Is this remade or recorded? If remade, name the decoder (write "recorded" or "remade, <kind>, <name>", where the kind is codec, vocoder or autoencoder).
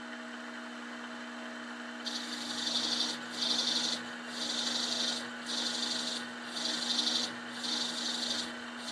recorded